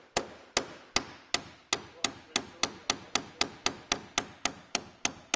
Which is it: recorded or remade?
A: recorded